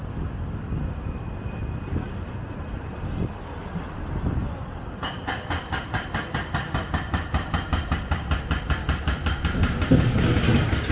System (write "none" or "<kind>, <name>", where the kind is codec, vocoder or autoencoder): none